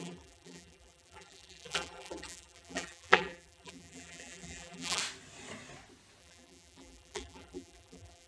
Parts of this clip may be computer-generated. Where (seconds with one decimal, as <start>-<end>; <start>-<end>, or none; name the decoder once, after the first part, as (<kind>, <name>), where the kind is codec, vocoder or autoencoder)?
0.0-5.0 (vocoder, BigVGAN v2); 6.2-8.3